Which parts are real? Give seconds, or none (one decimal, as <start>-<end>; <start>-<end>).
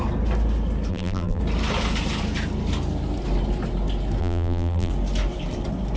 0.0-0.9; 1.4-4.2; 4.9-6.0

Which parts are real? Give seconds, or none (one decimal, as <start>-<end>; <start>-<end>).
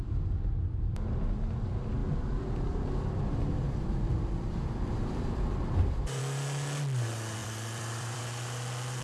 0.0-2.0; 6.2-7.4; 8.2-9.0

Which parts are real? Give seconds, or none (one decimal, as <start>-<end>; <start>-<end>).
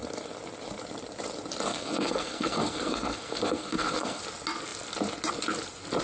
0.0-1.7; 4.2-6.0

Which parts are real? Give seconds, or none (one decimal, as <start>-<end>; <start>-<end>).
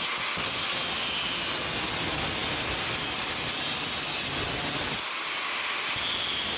0.0-6.6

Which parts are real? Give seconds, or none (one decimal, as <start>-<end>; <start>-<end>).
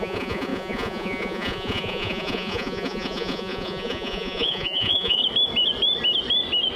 5.2-6.8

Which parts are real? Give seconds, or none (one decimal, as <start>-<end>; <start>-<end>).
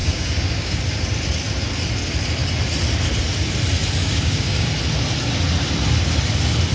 0.8-4.0; 4.7-6.7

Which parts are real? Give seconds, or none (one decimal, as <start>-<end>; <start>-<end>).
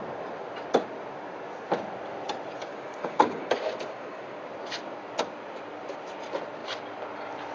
0.0-2.7; 4.4-7.5